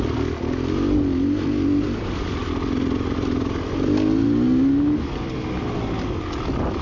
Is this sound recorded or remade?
recorded